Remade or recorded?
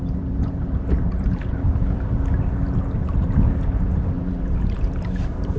recorded